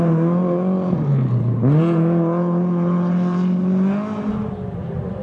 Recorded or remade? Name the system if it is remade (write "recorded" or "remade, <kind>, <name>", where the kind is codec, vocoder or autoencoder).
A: recorded